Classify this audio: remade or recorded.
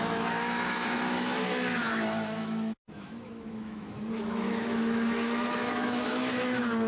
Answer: remade